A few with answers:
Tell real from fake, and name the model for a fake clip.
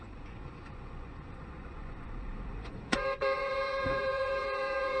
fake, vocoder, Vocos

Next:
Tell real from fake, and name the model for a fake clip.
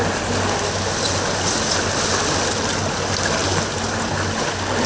real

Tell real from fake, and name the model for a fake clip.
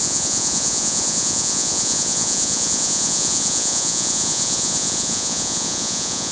fake, vocoder, Vocos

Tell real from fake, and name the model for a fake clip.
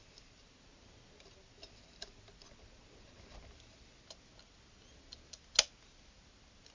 real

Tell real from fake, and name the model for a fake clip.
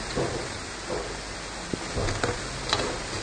real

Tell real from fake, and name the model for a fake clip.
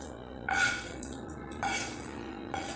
fake, vocoder, Vocos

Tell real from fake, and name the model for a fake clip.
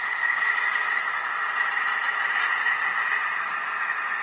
real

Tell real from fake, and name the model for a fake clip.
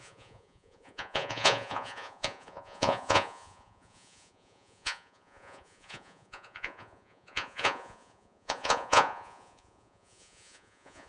fake, vocoder, Vocos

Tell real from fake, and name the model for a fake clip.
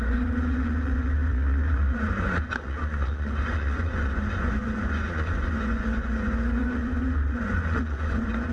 fake, vocoder, Vocos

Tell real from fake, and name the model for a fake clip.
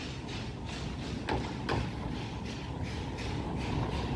real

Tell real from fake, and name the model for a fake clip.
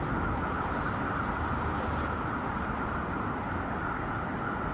real